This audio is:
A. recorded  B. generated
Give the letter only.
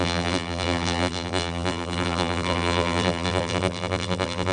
B